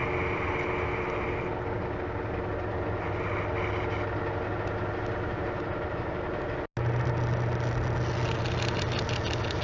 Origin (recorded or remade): recorded